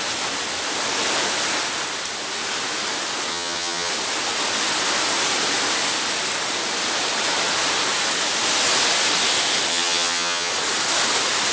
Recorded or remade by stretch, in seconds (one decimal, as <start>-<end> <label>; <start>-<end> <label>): 0.0-3.3 recorded; 3.3-3.9 remade; 3.9-9.7 recorded; 9.7-10.5 remade; 10.5-11.5 recorded